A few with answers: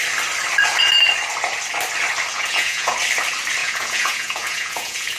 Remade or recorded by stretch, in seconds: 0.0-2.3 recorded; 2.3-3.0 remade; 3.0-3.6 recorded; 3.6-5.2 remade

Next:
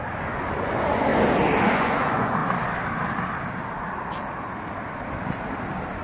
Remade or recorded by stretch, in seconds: 0.0-1.1 remade; 1.1-1.6 recorded; 1.6-2.4 remade; 2.4-6.0 recorded

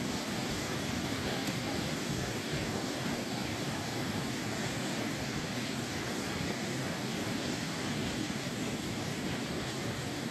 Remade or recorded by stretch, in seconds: 0.0-10.3 remade